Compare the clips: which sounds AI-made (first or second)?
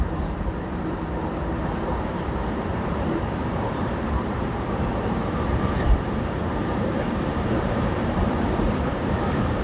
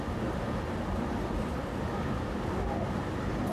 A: first